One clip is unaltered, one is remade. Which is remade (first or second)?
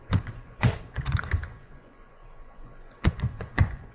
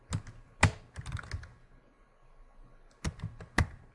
first